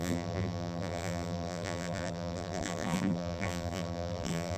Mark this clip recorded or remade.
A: remade